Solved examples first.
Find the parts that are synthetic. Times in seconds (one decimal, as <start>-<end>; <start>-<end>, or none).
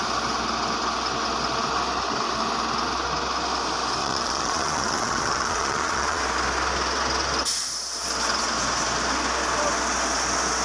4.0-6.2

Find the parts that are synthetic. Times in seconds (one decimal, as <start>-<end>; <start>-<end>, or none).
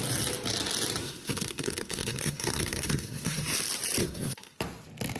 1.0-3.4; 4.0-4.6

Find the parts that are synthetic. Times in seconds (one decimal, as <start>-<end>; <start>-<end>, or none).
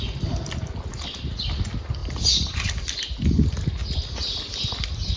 none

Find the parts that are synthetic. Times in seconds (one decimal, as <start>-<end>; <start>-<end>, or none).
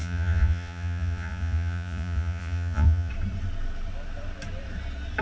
0.0-3.1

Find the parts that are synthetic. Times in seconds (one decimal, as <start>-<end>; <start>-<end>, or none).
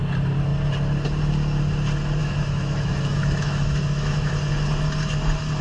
2.2-4.3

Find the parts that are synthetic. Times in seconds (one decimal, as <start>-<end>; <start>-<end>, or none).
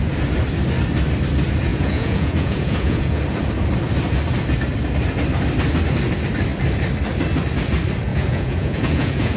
1.7-3.2; 8.1-9.4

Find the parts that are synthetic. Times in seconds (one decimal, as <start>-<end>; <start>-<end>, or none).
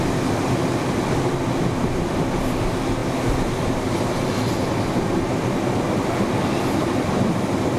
none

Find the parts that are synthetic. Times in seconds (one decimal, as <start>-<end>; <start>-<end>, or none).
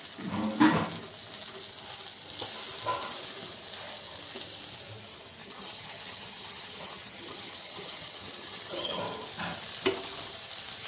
5.4-9.0